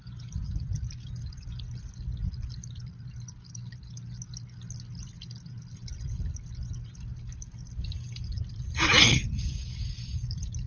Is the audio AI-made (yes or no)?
no